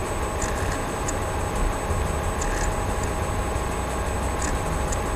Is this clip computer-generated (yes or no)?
no